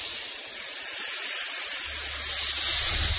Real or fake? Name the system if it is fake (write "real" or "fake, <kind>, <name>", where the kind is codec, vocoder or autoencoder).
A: real